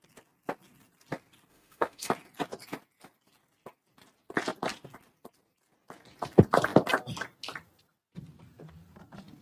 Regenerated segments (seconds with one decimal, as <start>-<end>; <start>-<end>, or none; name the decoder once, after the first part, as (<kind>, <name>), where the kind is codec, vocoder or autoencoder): 1.5-2.1 (autoencoder, DAC-VAE)